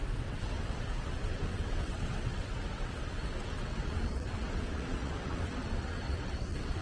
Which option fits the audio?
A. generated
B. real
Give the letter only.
A